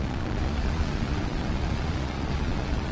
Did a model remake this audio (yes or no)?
yes